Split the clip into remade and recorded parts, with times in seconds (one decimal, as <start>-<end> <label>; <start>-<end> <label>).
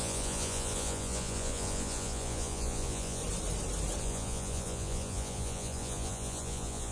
0.0-3.2 remade; 3.2-4.0 recorded; 4.0-6.9 remade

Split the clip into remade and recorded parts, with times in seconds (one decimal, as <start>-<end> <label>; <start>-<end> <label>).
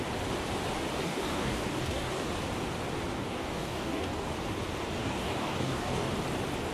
0.0-0.9 recorded; 0.9-2.3 remade; 2.3-3.1 recorded; 3.1-4.3 remade; 4.3-5.0 recorded; 5.0-6.1 remade; 6.1-6.7 recorded